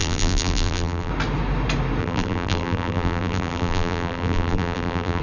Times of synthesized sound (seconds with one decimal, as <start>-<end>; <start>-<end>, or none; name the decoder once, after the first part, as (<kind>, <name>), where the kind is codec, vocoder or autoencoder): 0.0-1.1 (vocoder, BigVGAN v2); 2.0-5.2